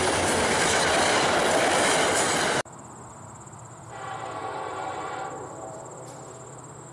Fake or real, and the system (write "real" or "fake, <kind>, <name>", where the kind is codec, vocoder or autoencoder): fake, vocoder, BigVGAN v2